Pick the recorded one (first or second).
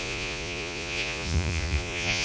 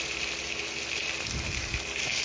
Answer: second